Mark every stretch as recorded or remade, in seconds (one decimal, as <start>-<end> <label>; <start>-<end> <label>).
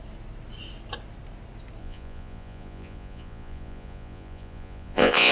0.0-1.8 recorded; 1.8-5.3 remade